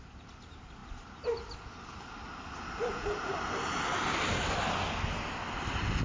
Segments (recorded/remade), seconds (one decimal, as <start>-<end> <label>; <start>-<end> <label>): 0.0-6.0 recorded